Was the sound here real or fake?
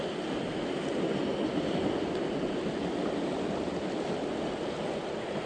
real